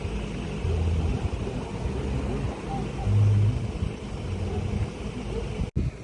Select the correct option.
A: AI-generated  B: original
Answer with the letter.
B